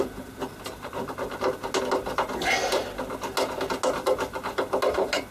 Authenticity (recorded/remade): recorded